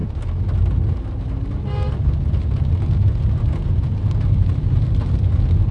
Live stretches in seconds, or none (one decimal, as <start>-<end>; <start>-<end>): 0.0-5.7